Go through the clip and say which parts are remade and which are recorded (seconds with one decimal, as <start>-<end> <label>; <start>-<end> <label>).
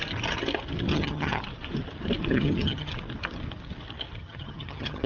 0.0-0.9 recorded; 0.9-1.4 remade; 1.4-2.3 recorded; 2.3-2.9 remade; 2.9-4.2 recorded; 4.2-5.1 remade